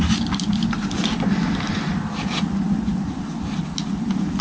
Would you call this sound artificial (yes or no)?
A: no